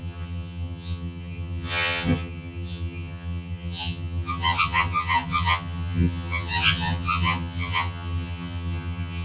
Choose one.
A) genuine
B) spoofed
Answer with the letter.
B